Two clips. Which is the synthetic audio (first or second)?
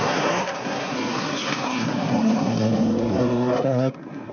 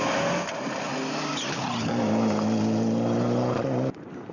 first